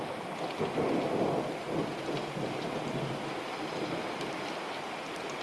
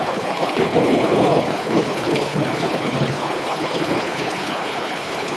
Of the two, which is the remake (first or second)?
second